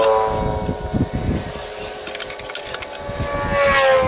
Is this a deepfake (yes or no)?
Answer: no